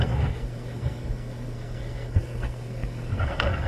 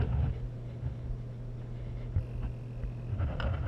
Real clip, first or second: second